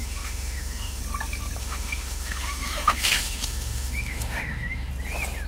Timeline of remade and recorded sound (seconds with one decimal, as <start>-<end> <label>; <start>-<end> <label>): 0.0-1.0 remade; 1.0-1.6 recorded; 1.6-4.9 remade; 4.9-5.5 recorded